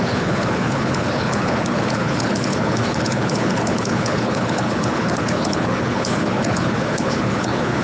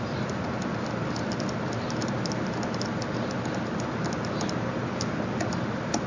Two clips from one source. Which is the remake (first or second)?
first